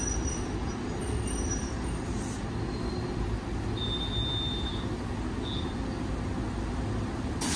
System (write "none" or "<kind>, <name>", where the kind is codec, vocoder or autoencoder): none